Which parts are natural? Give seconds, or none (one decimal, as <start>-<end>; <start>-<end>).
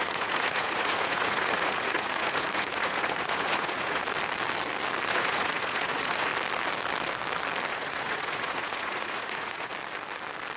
4.0-5.1; 6.3-7.7; 9.7-10.6